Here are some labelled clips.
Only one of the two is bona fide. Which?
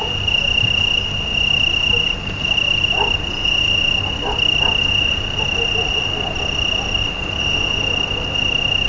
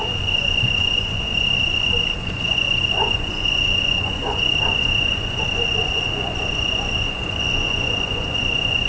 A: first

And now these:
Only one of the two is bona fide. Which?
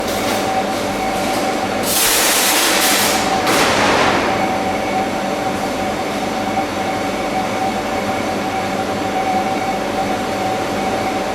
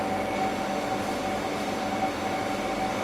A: second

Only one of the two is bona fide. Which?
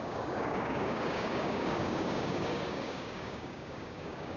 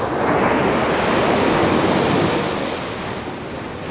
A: second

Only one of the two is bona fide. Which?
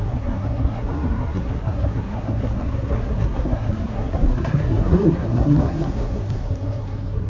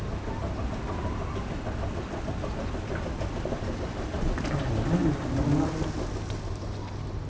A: second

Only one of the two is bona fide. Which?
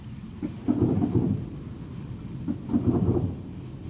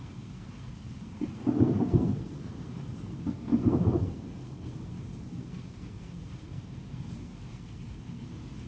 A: first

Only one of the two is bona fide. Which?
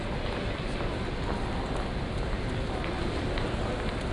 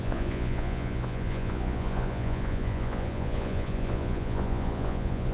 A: first